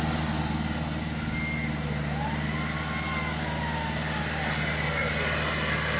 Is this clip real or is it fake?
real